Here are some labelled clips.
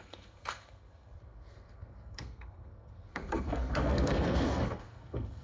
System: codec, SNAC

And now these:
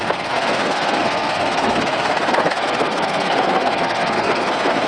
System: codec, SNAC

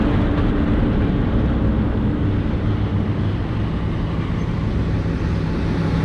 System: none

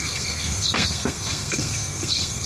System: codec, SNAC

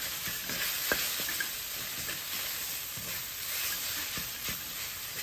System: none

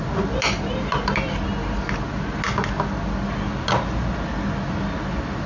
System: none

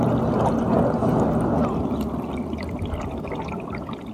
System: none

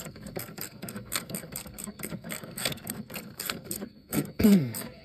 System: codec, SNAC